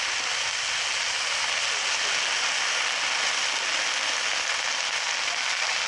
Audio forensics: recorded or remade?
recorded